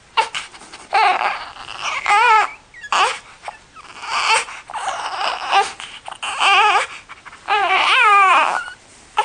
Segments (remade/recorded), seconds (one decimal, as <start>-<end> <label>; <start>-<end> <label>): 0.0-2.5 remade; 2.5-7.2 recorded; 7.2-9.2 remade